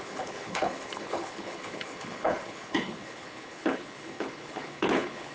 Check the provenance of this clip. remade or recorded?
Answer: remade